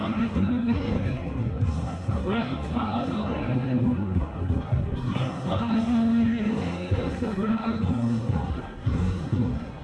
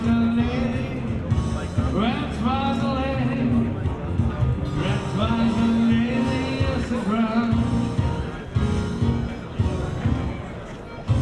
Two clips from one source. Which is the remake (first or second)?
first